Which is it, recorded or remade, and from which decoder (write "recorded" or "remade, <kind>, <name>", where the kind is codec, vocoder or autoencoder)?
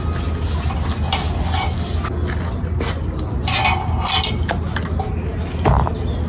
recorded